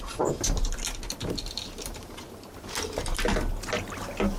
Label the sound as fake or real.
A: real